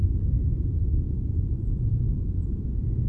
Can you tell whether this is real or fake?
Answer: real